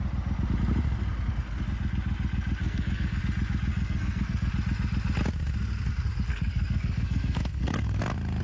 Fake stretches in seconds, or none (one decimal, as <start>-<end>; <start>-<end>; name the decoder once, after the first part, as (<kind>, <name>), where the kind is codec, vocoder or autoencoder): 2.6-3.2 (codec, SNAC); 3.7-4.5; 6.3-8.0